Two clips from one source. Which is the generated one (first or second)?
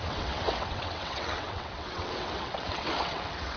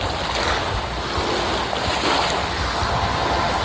first